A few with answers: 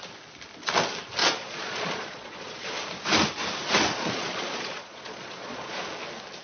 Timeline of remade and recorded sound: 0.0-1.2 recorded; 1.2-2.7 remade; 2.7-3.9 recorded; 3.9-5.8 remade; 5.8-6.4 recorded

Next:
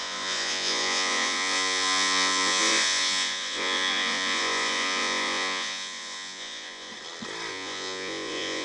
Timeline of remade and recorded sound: 0.0-6.9 remade; 6.9-7.5 recorded; 7.5-8.6 remade

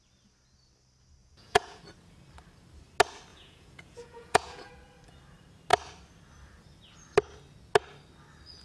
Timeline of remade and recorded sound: 0.0-1.2 recorded; 1.2-1.8 remade; 1.8-3.3 recorded; 3.3-4.7 remade; 4.7-8.6 recorded

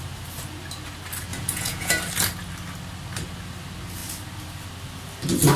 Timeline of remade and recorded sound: 0.0-1.3 recorded; 1.3-1.9 remade; 1.9-5.6 recorded

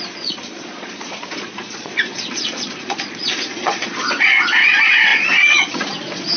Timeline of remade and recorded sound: 0.0-6.4 remade

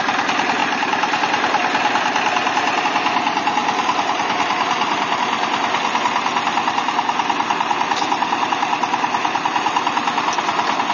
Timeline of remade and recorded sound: 0.0-10.9 recorded

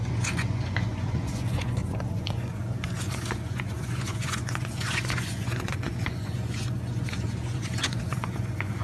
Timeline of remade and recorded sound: 0.0-8.8 remade

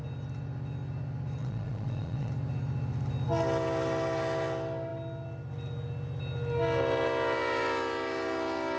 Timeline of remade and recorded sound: 0.0-1.4 recorded; 1.4-2.3 remade; 2.3-8.8 recorded